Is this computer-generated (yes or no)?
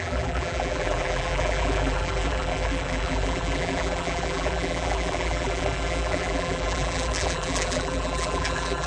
yes